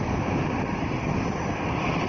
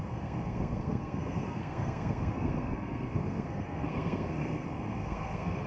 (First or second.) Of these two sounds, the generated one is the second